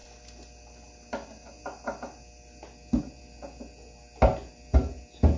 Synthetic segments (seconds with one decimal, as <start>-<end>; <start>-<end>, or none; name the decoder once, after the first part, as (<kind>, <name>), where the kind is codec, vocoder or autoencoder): none